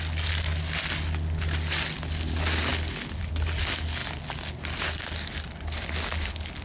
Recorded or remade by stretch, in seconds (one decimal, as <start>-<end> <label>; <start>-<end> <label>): 0.0-6.6 recorded